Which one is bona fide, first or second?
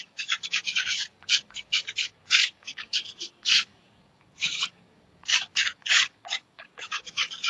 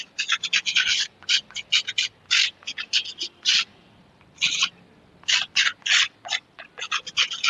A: second